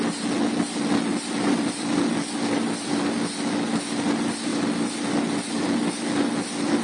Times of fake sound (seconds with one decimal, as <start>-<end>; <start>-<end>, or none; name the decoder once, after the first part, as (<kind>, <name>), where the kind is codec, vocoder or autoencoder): none